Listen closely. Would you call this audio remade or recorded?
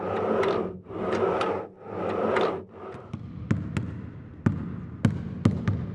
recorded